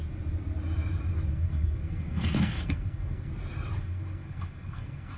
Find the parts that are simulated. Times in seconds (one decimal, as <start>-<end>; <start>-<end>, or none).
1.3-3.3; 3.8-5.2